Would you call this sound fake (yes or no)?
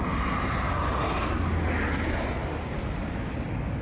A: no